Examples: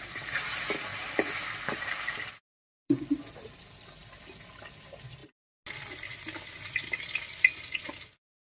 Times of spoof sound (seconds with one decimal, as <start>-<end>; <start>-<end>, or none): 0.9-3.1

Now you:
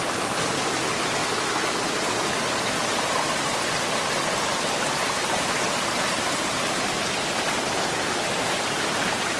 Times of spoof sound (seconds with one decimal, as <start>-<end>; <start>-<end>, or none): 5.0-6.7; 7.9-9.0

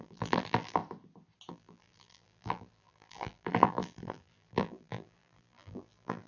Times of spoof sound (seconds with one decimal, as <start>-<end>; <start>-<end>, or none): 0.0-0.8; 1.5-6.3

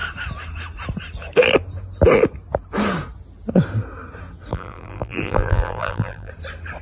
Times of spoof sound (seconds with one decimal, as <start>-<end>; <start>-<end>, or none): 4.5-6.3

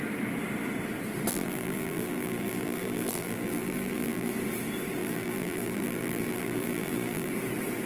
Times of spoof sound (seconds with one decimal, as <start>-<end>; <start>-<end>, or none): 1.3-4.3; 5.0-7.3